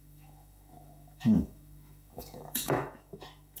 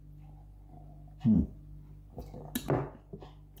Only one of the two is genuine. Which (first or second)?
second